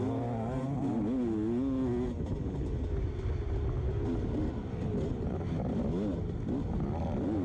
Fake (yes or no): no